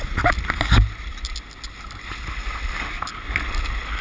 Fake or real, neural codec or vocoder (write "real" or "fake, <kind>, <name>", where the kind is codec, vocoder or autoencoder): real